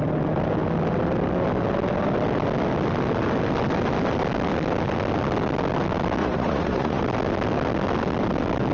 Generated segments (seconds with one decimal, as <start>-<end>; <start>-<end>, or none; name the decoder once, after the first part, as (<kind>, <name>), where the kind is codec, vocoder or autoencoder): 6.2-7.0 (vocoder, Vocos)

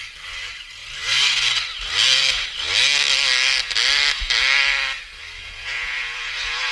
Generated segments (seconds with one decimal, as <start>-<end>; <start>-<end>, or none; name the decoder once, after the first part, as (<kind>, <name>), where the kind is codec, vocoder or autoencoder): 5.4-6.7 (vocoder, Vocos)

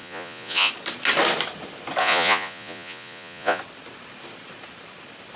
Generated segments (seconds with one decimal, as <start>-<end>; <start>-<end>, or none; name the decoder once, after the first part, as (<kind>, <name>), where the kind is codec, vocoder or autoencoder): 0.0-0.7 (vocoder, Vocos); 2.0-3.6

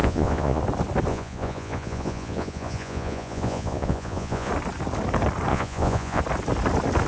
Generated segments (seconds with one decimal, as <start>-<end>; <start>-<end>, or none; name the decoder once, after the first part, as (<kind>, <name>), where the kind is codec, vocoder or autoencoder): 0.0-0.6 (vocoder, Vocos); 1.1-4.5; 5.5-6.2

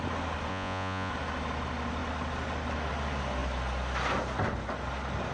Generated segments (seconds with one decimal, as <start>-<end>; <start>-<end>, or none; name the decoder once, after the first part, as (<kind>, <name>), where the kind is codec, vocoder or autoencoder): 0.5-1.1 (vocoder, Vocos)